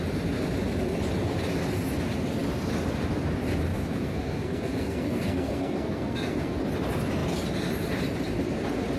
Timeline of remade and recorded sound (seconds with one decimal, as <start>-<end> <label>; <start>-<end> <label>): 0.0-3.7 recorded; 3.7-6.6 remade; 6.6-9.0 recorded